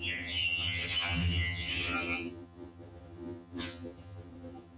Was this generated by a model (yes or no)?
yes